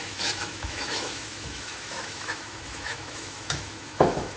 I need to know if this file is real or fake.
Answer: fake